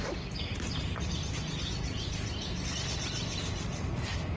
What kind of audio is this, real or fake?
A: real